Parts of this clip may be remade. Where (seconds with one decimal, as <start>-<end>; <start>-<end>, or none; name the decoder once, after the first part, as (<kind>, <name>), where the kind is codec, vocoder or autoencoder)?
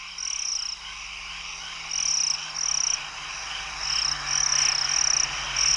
none